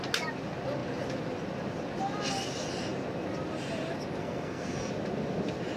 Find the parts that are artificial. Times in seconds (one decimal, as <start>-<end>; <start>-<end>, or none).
4.2-4.9